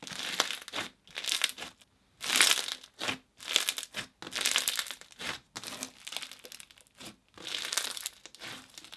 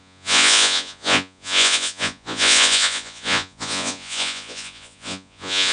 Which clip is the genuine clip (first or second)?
first